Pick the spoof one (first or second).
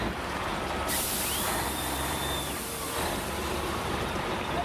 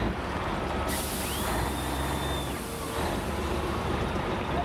first